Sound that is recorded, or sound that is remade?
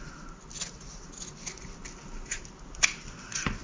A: recorded